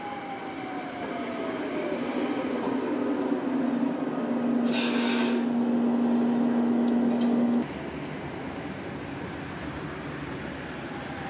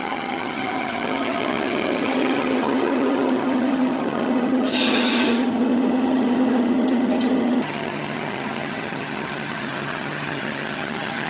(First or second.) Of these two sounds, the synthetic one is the second